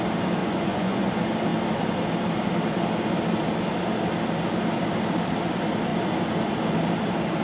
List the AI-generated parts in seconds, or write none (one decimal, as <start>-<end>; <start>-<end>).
0.4-1.1